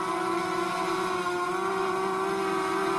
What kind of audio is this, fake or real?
real